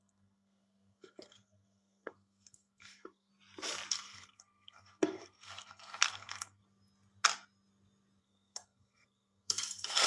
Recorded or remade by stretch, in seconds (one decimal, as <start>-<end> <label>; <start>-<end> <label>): 0.0-3.3 remade; 3.3-3.9 recorded; 3.9-6.6 remade; 6.6-8.2 recorded; 8.2-10.1 remade